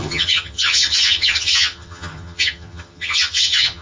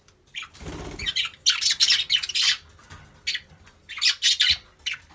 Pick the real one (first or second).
second